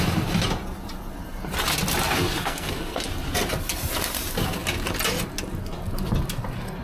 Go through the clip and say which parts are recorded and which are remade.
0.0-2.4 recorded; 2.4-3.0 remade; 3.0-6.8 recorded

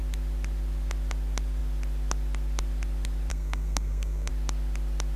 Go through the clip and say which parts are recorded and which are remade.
0.0-3.3 recorded; 3.3-4.3 remade; 4.3-5.2 recorded